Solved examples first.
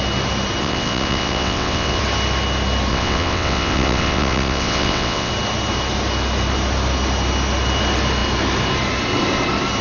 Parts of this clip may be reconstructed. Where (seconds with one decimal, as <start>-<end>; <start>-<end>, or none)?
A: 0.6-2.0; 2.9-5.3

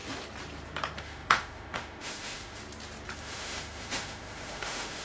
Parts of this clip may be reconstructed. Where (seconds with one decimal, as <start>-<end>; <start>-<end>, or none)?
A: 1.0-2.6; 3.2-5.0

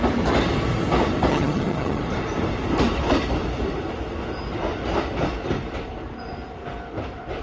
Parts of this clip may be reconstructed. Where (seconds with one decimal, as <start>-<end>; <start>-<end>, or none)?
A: 1.3-2.0